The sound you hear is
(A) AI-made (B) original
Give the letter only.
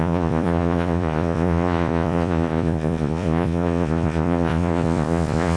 A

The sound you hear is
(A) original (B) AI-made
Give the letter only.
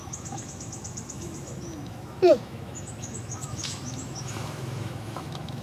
B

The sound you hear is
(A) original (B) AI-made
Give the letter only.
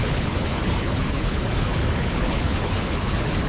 B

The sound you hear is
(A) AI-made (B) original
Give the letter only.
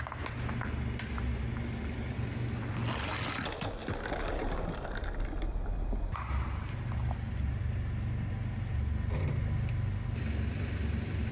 B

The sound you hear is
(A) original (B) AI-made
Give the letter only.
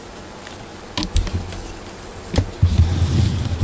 A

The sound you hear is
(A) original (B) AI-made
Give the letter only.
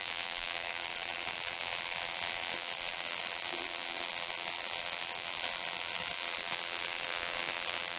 B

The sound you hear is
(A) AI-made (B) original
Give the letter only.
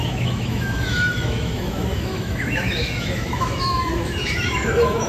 A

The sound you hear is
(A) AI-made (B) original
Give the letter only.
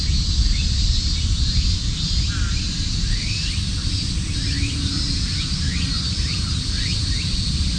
B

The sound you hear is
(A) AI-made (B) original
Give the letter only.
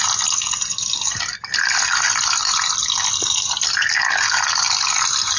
B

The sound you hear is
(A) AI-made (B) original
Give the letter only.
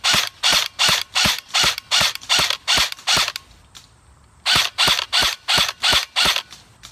B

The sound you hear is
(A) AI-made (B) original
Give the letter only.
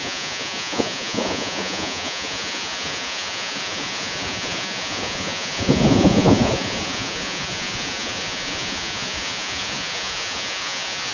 A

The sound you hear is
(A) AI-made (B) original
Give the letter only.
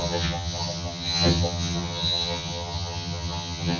A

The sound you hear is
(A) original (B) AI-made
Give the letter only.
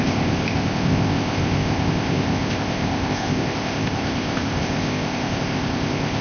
B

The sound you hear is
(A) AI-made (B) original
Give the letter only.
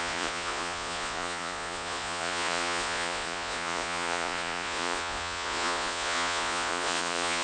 A